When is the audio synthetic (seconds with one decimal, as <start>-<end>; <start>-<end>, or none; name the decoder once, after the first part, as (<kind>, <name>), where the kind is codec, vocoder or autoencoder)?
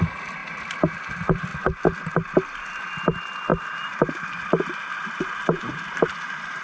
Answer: 3.5-4.4 (vocoder, BigVGAN v2)